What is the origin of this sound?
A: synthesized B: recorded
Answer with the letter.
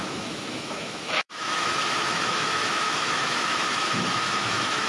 A